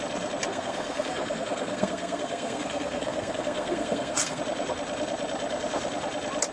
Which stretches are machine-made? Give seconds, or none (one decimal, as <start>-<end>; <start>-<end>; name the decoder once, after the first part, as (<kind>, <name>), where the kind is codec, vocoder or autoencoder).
0.5-4.4 (codec, SNAC)